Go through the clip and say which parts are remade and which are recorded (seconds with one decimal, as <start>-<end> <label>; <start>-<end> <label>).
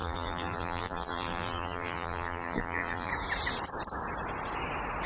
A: 0.0-3.1 remade; 3.1-5.1 recorded